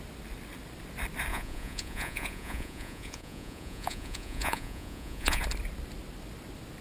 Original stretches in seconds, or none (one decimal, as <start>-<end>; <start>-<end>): 0.0-1.3; 5.4-6.8